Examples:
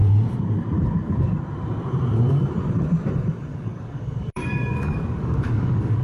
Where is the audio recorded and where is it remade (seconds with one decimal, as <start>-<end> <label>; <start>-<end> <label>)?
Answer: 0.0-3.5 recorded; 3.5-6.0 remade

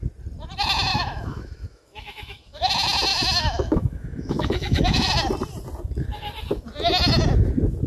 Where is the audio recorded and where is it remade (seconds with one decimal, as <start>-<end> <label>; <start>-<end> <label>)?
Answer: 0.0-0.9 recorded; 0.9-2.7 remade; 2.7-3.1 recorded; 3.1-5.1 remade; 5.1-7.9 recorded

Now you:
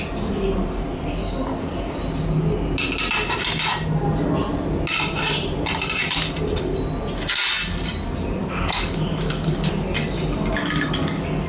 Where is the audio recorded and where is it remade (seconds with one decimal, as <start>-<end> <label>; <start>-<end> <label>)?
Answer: 0.0-1.2 recorded; 1.2-2.0 remade; 2.0-8.4 recorded; 8.4-9.7 remade; 9.7-10.6 recorded; 10.6-11.5 remade